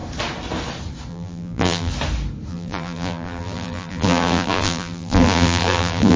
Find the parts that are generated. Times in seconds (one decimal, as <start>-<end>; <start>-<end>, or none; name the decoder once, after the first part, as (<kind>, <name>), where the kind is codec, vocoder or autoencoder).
1.1-1.9 (vocoder, BigVGAN v2); 2.5-6.2